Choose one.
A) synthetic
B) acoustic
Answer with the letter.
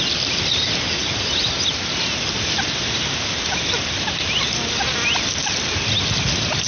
B